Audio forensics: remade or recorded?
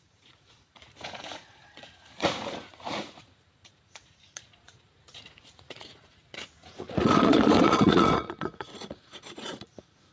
remade